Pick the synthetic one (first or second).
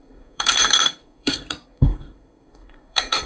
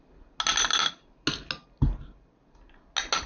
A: first